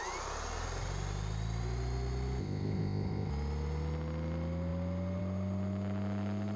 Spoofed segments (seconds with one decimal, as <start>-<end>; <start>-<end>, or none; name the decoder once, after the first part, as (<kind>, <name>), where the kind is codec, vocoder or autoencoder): 2.4-3.3 (codec, ZipCodec)